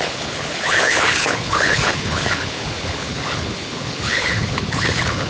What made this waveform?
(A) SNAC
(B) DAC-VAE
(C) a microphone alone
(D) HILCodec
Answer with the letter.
D